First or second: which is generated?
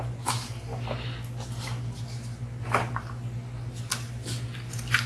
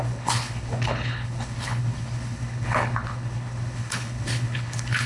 second